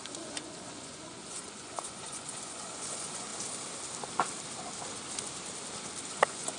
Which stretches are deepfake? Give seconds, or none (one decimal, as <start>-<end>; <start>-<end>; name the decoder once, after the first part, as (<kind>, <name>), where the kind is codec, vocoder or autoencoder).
0.0-3.3 (vocoder, Vocos); 6.1-6.6